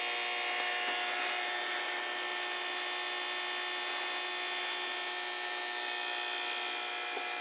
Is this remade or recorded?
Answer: recorded